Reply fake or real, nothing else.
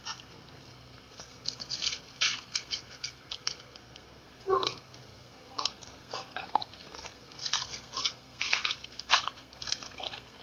fake